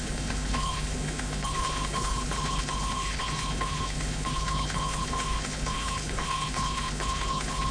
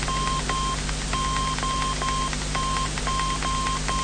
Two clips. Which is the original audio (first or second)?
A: second